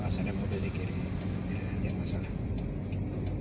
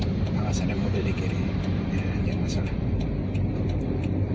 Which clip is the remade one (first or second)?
second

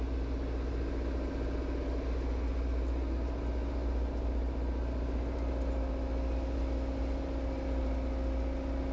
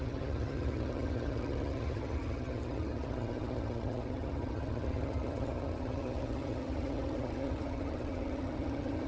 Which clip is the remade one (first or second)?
second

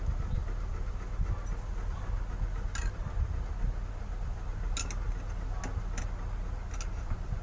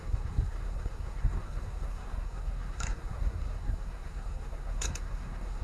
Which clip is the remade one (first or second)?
second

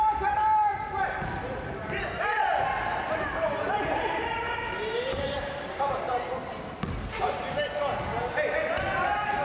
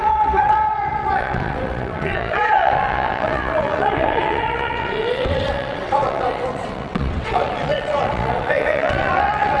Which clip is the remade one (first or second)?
second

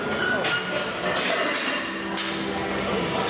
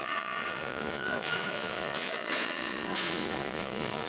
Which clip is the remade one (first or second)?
second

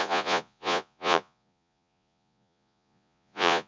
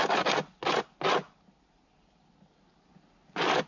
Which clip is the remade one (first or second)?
first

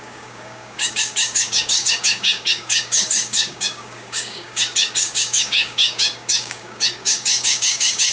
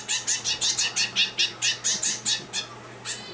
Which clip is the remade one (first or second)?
first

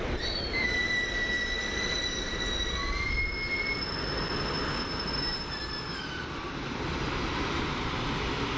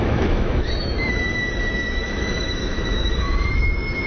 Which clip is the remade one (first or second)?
second